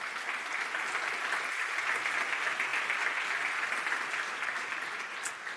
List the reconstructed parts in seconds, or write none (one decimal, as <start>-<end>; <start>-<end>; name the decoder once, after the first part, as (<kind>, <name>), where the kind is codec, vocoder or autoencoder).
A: none